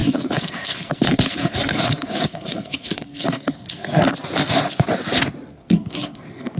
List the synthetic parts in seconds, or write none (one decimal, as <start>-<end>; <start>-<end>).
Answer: 0.0-4.0; 5.5-6.6